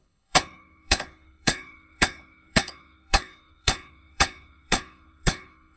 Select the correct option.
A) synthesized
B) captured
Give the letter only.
A